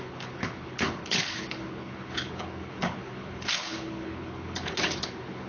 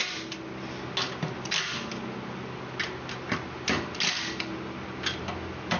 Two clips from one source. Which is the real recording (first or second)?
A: second